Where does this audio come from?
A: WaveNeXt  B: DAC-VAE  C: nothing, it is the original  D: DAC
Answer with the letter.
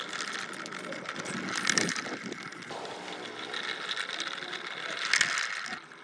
C